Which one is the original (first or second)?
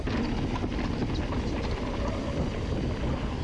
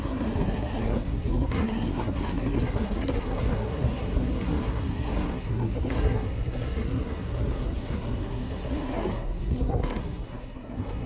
first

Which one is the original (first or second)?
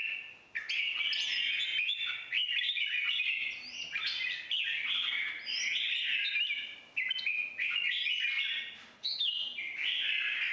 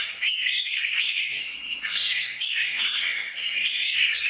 first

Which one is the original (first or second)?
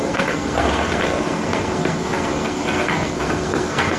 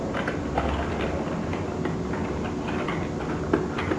second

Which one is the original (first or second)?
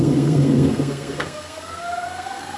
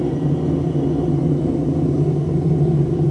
second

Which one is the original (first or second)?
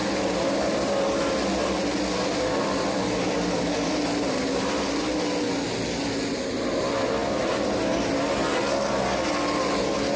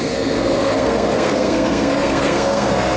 first